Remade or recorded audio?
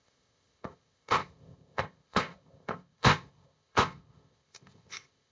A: remade